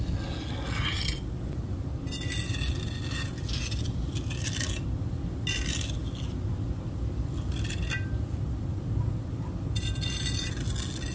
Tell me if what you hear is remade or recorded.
recorded